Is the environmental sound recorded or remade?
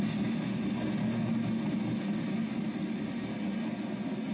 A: recorded